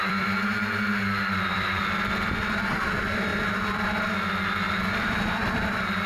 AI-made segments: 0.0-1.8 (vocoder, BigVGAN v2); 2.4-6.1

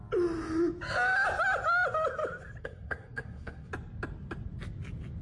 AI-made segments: 2.6-3.7 (codec, SNAC)

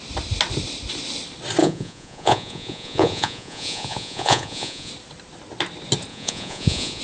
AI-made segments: 1.6-4.9 (vocoder, Vocos); 6.1-7.0

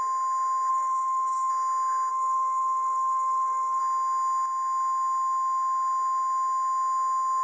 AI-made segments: 0.7-1.5 (codec, DAC); 2.1-3.8

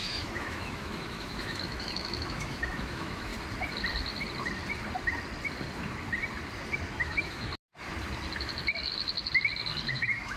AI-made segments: 0.0-3.3 (autoencoder, DAC-VAE); 7.0-7.5; 9.9-10.4

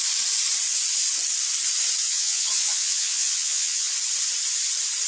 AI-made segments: 2.0-3.9 (vocoder, Vocos)

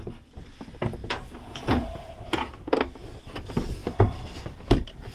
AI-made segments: 1.0-2.7 (vocoder, Vocos)

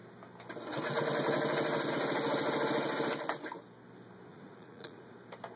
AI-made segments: 4.3-5.1 (vocoder, Vocos)